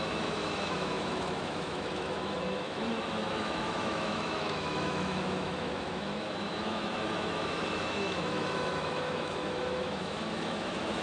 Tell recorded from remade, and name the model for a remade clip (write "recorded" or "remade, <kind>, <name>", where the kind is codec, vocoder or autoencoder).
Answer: remade, autoencoder, DAC-VAE